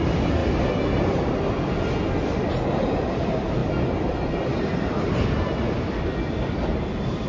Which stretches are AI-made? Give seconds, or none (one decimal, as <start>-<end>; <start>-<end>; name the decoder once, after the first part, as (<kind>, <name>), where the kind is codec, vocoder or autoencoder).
0.0-0.4 (vocoder, BigVGAN v2); 2.7-3.6